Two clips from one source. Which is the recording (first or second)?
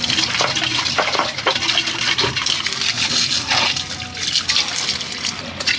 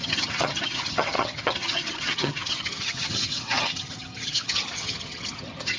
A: first